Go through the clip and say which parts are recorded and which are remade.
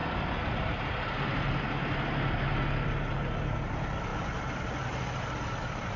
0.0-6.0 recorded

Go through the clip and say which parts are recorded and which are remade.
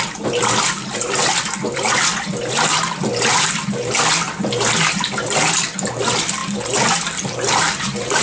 0.0-8.2 recorded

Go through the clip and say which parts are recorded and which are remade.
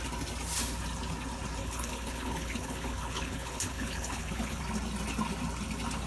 0.0-1.6 recorded; 1.6-4.6 remade; 4.6-6.1 recorded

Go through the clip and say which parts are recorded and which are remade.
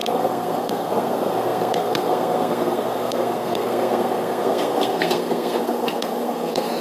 0.0-6.8 remade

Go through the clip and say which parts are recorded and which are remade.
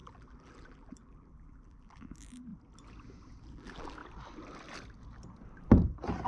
0.0-2.5 remade; 2.5-3.5 recorded; 3.5-4.0 remade; 4.0-6.3 recorded